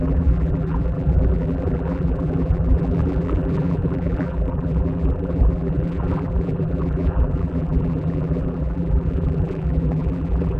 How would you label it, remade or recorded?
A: remade